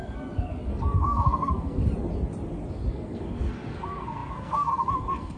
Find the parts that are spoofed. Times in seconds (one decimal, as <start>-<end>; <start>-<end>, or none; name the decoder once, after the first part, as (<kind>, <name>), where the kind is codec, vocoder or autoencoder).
0.0-1.8 (codec, SNAC); 2.9-5.4